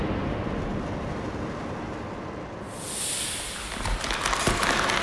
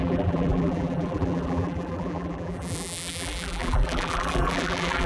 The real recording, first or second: first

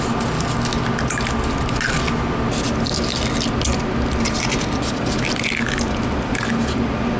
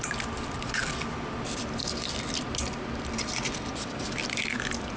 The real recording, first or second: first